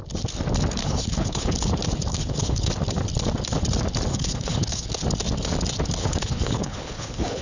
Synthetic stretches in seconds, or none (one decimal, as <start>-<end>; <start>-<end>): 0.8-1.7; 2.1-2.7; 4.1-4.9; 6.0-7.4